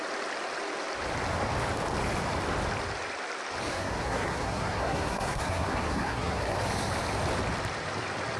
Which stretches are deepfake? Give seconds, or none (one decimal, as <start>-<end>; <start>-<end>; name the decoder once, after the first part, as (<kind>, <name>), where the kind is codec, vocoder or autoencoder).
3.7-6.6 (codec, SNAC)